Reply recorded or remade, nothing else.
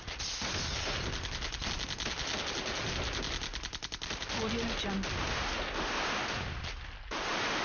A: recorded